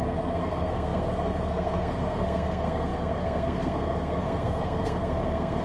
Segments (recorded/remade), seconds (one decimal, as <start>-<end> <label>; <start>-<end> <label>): 0.0-5.6 remade